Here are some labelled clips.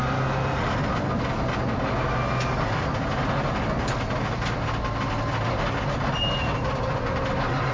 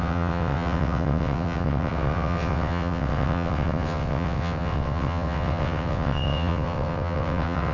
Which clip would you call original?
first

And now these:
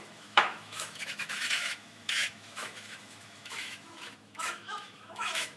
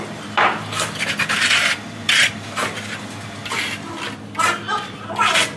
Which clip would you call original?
second